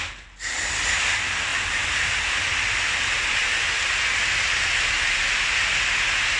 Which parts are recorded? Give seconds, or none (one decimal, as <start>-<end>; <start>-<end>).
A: 0.0-6.4